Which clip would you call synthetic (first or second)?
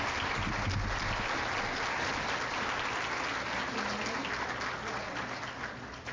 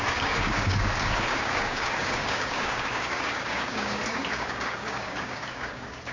second